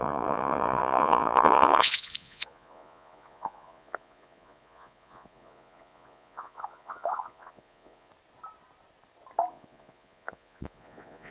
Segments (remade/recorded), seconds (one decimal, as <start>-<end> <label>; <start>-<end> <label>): 0.0-8.1 remade; 8.1-9.5 recorded; 9.5-11.3 remade